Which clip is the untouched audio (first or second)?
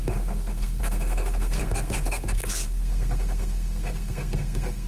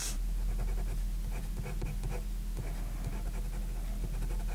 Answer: second